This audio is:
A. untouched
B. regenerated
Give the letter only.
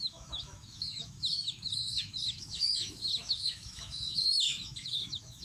B